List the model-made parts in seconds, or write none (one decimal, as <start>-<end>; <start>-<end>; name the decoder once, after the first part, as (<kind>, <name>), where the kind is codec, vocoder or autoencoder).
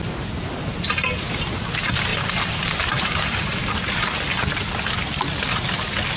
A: 2.1-3.7 (vocoder, BigVGAN v2)